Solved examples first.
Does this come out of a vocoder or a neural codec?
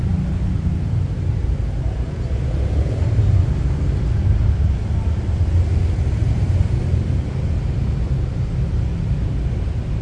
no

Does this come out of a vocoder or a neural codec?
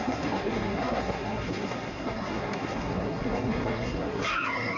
yes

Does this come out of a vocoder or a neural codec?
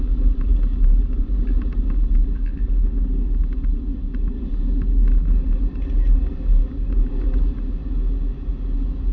no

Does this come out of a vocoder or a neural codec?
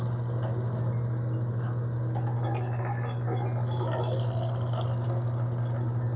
no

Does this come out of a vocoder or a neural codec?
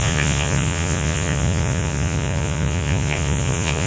yes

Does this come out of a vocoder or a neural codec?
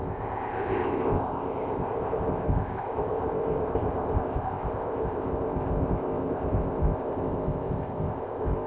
yes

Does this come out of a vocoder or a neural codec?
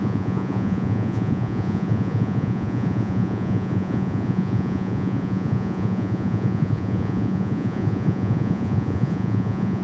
yes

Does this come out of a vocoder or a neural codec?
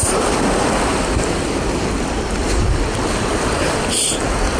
no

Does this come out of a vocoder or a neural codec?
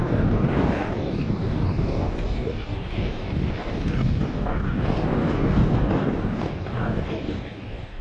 yes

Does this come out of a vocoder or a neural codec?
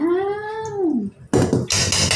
no